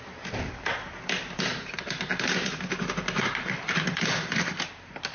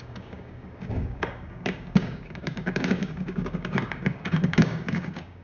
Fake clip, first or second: second